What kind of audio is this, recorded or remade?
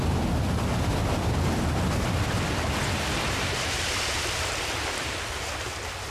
recorded